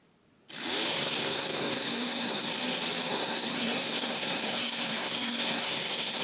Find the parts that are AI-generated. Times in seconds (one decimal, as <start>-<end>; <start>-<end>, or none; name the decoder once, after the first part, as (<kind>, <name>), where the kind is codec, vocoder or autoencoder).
0.9-2.5 (codec, SNAC); 3.1-6.2